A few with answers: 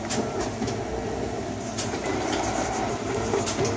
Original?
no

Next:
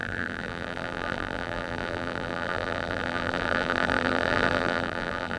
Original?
no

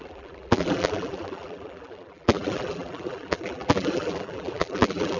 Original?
no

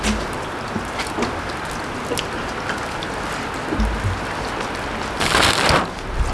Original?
yes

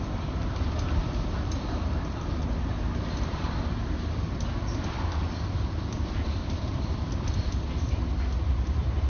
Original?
no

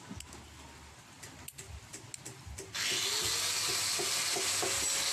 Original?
yes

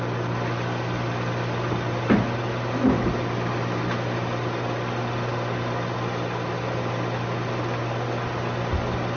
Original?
yes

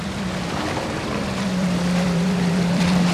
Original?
no